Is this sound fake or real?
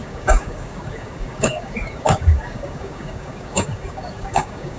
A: fake